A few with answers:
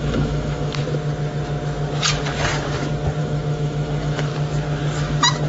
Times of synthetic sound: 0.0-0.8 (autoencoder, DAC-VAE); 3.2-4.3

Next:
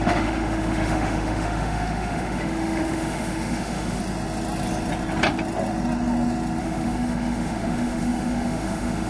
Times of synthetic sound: 0.0-4.0 (autoencoder, DAC-VAE); 6.6-9.1

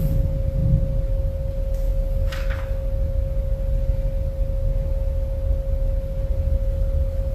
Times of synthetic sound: none

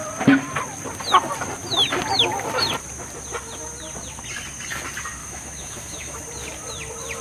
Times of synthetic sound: 5.2-6.2 (autoencoder, DAC-VAE)

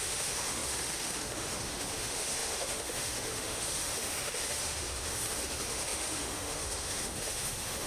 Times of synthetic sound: 0.0-7.9 (autoencoder, DAC-VAE)